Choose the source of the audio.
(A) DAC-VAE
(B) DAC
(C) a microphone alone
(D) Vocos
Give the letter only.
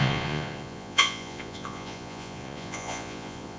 D